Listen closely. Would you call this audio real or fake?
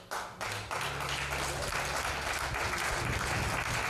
real